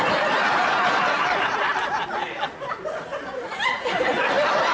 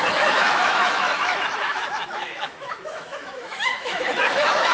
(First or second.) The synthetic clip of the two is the second